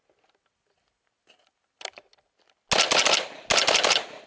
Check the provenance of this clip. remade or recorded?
recorded